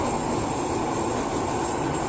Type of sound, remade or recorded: recorded